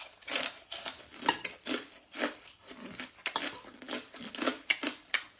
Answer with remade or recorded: recorded